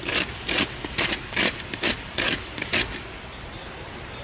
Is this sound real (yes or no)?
yes